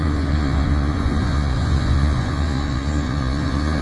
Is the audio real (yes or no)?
no